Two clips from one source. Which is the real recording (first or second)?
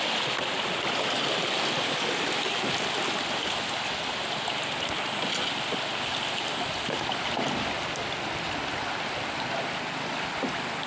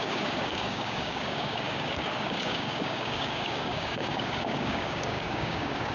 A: first